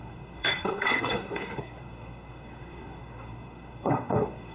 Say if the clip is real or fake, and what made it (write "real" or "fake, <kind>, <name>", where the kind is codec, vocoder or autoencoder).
fake, codec, SNAC